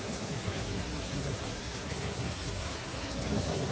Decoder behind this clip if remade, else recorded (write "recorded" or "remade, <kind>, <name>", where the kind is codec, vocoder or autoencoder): remade, codec, SNAC